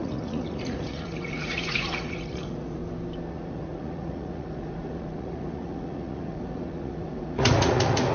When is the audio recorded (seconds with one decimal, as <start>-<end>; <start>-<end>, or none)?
2.8-3.3